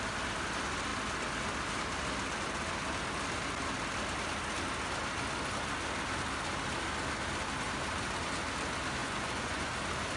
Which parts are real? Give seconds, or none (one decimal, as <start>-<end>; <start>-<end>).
0.0-9.0; 9.7-10.2